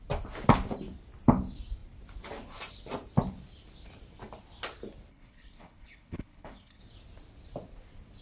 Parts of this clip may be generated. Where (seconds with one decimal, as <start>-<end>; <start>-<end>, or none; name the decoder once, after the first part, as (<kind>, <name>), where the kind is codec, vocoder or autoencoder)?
5.1-6.8 (codec, HILCodec)